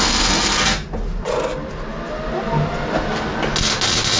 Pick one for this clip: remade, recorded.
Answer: recorded